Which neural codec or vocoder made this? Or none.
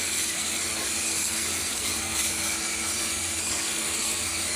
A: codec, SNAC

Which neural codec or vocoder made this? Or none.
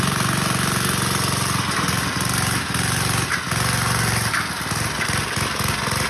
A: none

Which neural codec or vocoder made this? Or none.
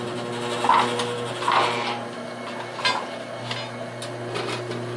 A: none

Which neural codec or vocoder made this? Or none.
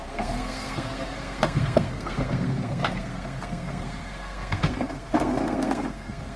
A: codec, SNAC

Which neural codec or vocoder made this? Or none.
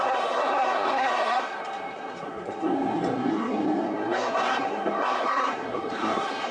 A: codec, SNAC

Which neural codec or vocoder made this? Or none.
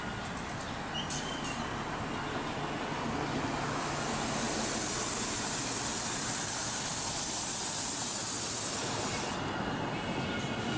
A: none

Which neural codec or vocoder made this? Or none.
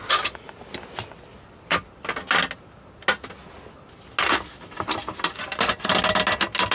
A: none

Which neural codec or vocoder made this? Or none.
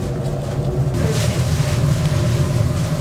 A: none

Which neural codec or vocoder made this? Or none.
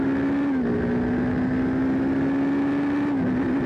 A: none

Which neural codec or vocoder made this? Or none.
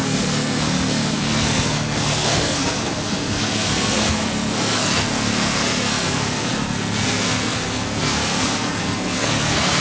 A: codec, SNAC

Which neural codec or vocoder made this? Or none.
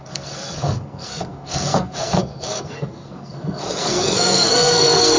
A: codec, SNAC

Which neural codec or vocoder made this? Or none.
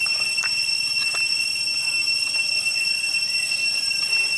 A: none